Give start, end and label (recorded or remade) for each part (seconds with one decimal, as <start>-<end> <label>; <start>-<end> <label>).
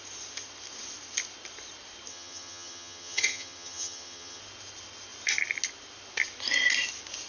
0.0-2.1 recorded; 2.1-4.4 remade; 4.4-7.3 recorded